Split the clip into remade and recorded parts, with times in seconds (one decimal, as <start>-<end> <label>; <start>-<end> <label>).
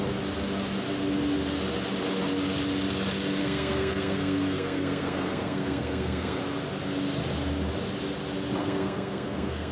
0.0-3.4 recorded; 3.4-6.4 remade; 6.4-8.6 recorded; 8.6-9.7 remade